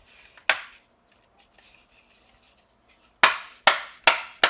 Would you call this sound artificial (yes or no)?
no